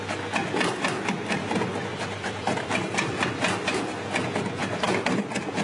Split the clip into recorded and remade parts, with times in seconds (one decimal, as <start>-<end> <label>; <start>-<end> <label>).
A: 0.0-1.9 recorded; 1.9-3.3 remade; 3.3-4.6 recorded; 4.6-5.6 remade